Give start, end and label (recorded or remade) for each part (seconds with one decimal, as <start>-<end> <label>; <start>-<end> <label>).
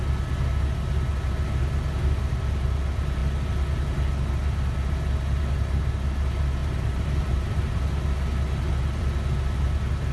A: 0.0-6.6 recorded; 6.6-8.0 remade; 8.0-10.1 recorded